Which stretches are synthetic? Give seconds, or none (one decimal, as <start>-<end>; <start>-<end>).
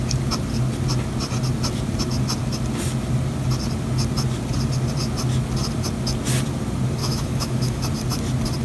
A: 7.0-7.8